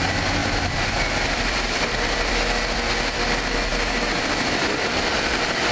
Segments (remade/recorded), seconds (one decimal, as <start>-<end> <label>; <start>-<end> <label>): 0.0-0.4 recorded; 0.4-2.3 remade; 2.3-5.7 recorded